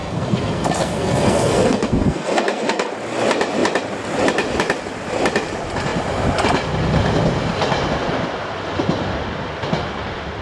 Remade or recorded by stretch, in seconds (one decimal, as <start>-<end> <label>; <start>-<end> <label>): 0.0-2.9 remade; 2.9-10.4 recorded